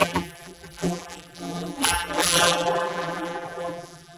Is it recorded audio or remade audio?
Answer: remade